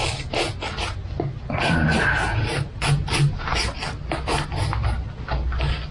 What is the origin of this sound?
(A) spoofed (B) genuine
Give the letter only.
B